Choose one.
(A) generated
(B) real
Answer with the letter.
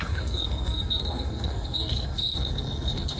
A